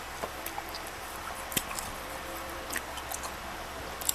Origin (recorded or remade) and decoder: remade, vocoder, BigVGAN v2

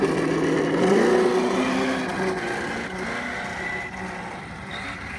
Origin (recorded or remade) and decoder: recorded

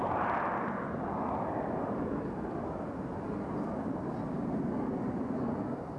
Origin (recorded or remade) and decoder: recorded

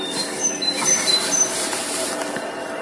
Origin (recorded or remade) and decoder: remade, vocoder, BigVGAN v2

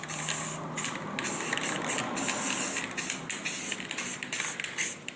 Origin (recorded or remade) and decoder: recorded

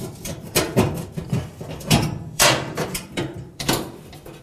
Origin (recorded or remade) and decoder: remade, vocoder, BigVGAN v2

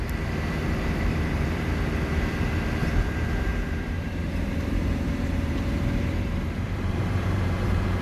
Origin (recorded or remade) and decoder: remade, vocoder, BigVGAN v2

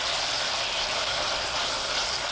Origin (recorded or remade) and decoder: recorded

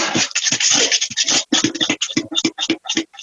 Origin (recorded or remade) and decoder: recorded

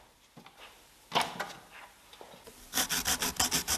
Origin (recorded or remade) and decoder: recorded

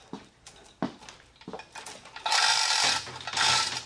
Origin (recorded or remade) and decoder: recorded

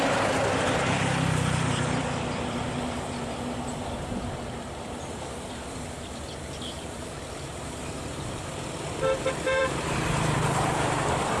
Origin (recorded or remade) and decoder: remade, vocoder, BigVGAN v2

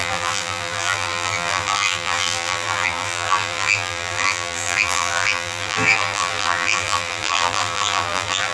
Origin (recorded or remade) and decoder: remade, vocoder, BigVGAN v2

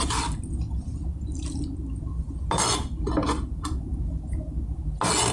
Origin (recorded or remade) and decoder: recorded